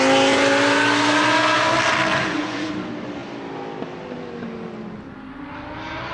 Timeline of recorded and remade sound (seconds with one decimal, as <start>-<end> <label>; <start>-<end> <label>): 0.0-2.1 recorded; 2.1-2.7 remade; 2.7-6.1 recorded